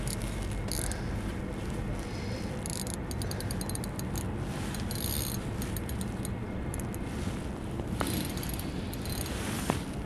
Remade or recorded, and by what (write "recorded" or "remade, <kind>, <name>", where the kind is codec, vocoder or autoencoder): recorded